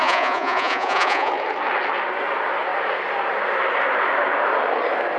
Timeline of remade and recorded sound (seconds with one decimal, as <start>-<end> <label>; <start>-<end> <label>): 0.0-1.3 remade; 1.3-5.2 recorded